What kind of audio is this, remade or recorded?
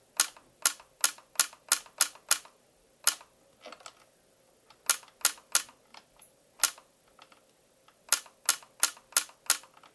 recorded